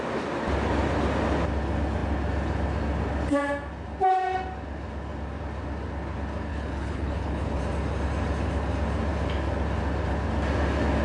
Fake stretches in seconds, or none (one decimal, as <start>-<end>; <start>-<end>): 6.5-7.6